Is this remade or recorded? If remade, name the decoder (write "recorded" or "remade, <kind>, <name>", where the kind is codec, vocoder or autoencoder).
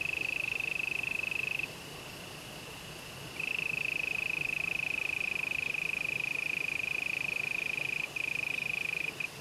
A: recorded